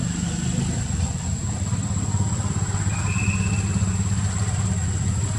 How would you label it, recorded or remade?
recorded